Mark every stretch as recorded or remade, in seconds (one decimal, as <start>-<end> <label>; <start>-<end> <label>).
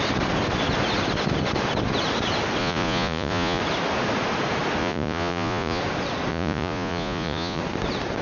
0.0-2.6 recorded; 2.6-3.6 remade; 3.6-4.8 recorded; 4.8-5.8 remade; 5.8-6.3 recorded; 6.3-7.6 remade; 7.6-8.2 recorded